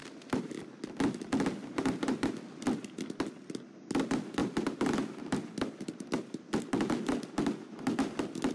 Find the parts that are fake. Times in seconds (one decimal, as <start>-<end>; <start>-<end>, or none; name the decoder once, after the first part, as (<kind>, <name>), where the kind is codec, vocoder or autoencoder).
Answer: 1.6-2.3 (vocoder, BigVGAN v2); 4.4-6.6